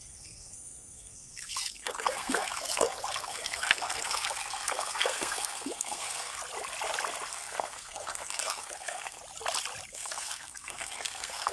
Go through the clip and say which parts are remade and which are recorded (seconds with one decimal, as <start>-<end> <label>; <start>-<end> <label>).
0.0-6.4 remade; 6.4-7.3 recorded; 7.3-9.2 remade; 9.2-9.9 recorded; 9.9-11.5 remade